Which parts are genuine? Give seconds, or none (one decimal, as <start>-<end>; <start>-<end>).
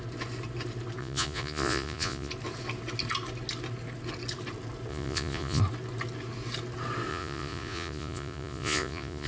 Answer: 0.0-1.0; 2.3-4.9; 5.6-7.1